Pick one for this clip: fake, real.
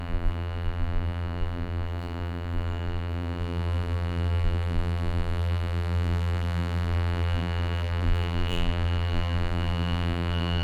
fake